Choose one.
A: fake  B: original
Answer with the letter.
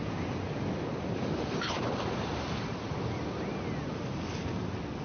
B